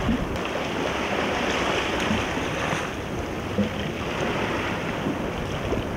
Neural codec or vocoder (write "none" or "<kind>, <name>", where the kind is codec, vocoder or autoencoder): none